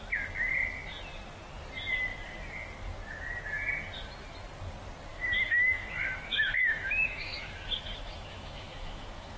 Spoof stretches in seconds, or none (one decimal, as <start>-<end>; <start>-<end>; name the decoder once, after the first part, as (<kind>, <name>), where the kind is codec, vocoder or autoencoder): 5.1-9.4 (autoencoder, DAC-VAE)